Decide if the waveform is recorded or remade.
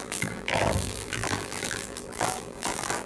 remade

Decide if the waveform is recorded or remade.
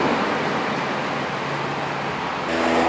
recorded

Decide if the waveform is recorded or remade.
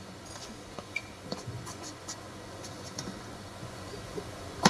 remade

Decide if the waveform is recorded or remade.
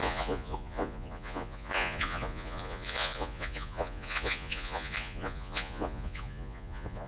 remade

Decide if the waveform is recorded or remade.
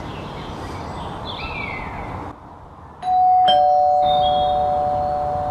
recorded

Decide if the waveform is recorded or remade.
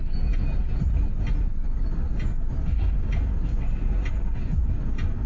recorded